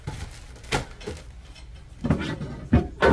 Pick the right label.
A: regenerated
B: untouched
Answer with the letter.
B